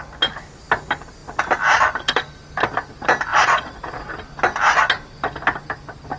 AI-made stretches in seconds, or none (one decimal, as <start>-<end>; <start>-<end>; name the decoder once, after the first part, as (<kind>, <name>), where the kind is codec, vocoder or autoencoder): 3.3-4.1 (vocoder, Vocos)